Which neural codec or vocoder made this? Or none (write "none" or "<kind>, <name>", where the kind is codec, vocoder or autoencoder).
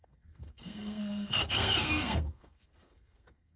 codec, SNAC